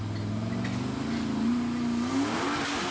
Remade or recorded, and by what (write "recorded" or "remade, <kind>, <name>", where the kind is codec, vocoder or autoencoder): recorded